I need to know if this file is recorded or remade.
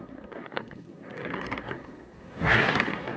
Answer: remade